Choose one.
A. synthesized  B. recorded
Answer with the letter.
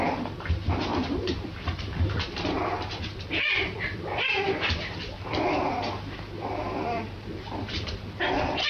A